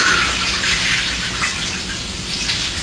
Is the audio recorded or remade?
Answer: recorded